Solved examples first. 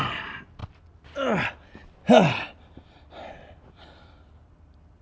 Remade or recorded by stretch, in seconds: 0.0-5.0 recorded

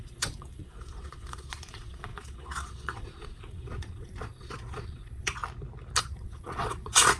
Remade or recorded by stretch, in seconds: 0.0-5.4 remade; 5.4-6.0 recorded; 6.0-7.2 remade